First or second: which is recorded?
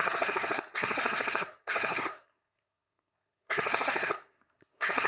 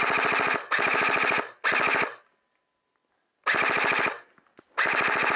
second